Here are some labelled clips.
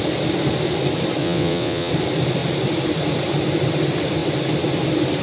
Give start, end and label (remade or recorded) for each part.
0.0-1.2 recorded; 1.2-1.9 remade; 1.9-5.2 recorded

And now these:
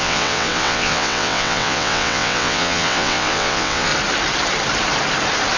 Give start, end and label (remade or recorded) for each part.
0.0-3.9 remade; 3.9-5.6 recorded